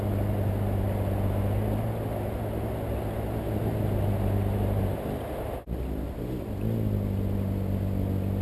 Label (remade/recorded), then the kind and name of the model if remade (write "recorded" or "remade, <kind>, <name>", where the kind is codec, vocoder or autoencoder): recorded